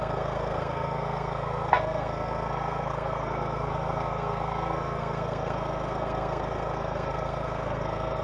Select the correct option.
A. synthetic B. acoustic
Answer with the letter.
A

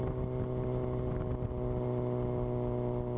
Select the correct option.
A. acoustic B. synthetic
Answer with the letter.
A